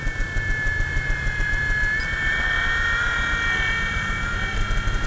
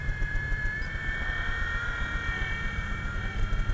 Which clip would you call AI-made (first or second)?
second